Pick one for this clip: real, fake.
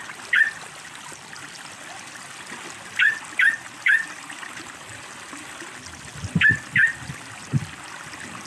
real